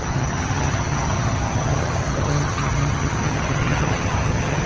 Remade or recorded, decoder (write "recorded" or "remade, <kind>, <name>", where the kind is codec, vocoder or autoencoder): remade, vocoder, HiFi-GAN